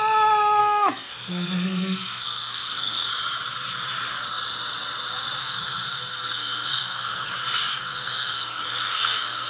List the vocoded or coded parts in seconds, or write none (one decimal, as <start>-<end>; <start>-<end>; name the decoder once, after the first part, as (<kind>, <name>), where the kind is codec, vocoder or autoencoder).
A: 0.6-3.1 (codec, SNAC); 5.4-7.3; 7.7-9.5